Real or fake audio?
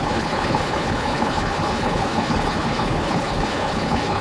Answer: fake